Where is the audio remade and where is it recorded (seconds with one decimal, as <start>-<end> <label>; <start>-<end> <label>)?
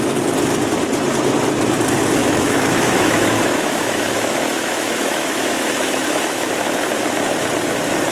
0.0-2.2 recorded; 2.2-6.5 remade; 6.5-8.1 recorded